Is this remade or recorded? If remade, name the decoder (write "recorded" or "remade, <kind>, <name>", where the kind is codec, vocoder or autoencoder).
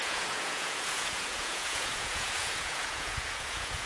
remade, vocoder, Vocos